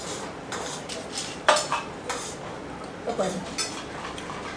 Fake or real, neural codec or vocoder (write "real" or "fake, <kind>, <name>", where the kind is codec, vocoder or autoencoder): real